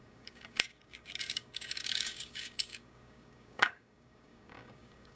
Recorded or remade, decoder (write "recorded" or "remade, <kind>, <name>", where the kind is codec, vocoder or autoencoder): remade, codec, DAC